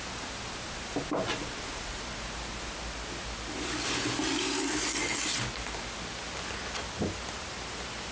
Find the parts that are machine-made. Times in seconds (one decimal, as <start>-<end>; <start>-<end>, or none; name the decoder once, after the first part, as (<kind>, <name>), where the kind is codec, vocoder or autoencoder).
none